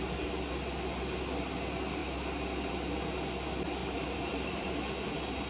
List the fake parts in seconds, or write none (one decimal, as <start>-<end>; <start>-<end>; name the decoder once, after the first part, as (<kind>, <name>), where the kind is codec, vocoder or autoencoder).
3.8-4.7 (vocoder, BigVGAN v2)